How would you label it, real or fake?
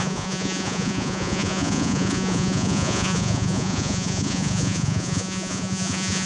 fake